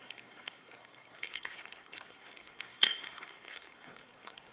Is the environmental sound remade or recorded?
remade